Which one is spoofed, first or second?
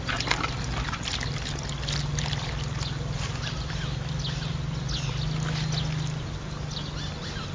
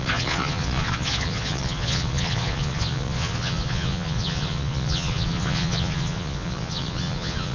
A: second